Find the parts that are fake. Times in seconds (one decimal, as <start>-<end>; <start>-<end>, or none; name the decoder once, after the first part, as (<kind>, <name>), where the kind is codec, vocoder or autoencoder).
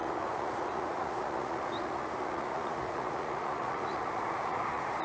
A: 0.0-5.0 (vocoder, Vocos)